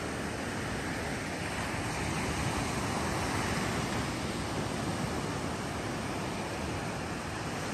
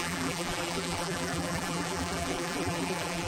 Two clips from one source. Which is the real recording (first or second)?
first